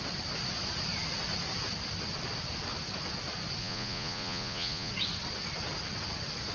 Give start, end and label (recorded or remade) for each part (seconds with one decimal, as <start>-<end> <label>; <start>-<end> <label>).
0.0-3.6 recorded; 3.6-4.9 remade; 4.9-6.5 recorded